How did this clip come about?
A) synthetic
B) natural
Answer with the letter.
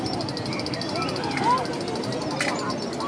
B